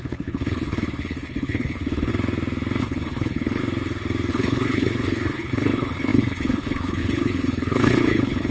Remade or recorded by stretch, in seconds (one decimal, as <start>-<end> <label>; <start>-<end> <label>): 0.0-2.1 remade; 2.1-2.8 recorded; 2.8-3.6 remade; 3.6-4.3 recorded; 4.3-8.5 remade